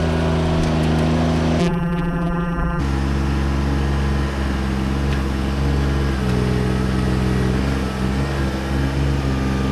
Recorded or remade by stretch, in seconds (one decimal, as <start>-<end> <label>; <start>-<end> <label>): 0.0-1.6 recorded; 1.6-2.8 remade; 2.8-9.7 recorded